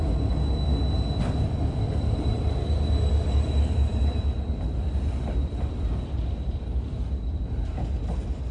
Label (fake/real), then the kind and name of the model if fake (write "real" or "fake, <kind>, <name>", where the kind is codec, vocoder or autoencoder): fake, vocoder, BigVGAN v2